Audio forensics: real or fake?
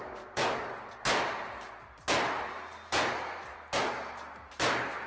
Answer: real